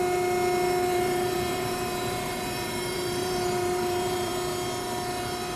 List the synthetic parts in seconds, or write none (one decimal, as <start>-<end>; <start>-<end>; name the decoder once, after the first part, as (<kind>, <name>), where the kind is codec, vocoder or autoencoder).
0.9-4.3 (vocoder, BigVGAN v2)